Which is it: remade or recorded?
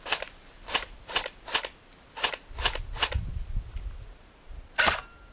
recorded